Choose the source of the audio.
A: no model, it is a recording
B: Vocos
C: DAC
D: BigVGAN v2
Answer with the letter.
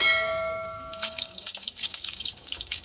C